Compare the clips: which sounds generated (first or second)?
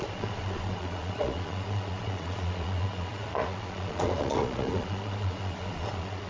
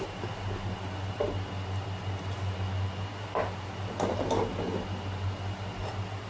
first